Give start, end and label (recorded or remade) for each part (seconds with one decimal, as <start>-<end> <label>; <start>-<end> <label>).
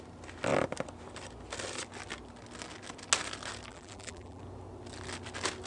0.0-3.7 recorded; 3.7-4.4 remade; 4.4-5.7 recorded